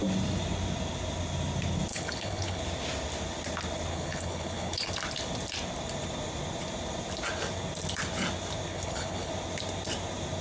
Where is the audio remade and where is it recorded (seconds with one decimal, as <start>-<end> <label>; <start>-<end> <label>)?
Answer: 0.0-1.9 recorded; 1.9-2.6 remade; 2.6-3.9 recorded; 3.9-4.9 remade; 4.9-8.7 recorded; 8.7-9.3 remade; 9.3-10.4 recorded